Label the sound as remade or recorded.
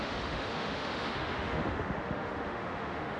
remade